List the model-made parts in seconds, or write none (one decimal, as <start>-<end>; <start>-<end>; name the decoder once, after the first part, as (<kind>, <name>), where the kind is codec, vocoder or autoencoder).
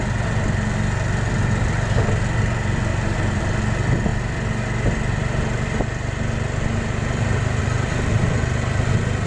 2.9-3.4 (vocoder, BigVGAN v2)